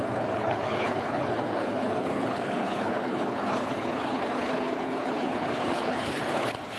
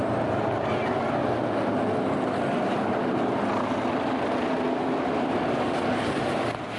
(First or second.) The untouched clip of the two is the second